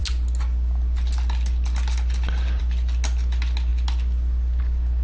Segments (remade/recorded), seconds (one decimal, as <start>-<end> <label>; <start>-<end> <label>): 0.0-5.0 recorded